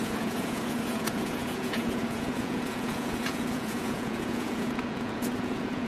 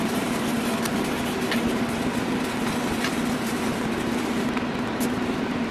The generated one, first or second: first